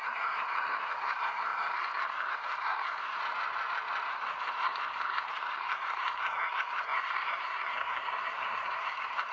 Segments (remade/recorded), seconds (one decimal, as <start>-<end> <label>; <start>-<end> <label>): 0.0-3.2 remade; 3.2-4.1 recorded; 4.1-9.3 remade